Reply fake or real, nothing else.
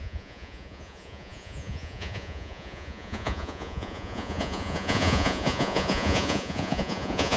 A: fake